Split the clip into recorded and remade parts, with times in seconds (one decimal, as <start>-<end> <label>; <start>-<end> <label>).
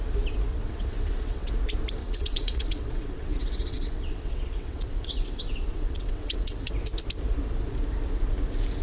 0.0-0.5 recorded; 0.5-1.5 remade; 1.5-2.0 recorded; 2.0-6.7 remade; 6.7-8.8 recorded